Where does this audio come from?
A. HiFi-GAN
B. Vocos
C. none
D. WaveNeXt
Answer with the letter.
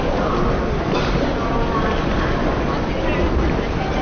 C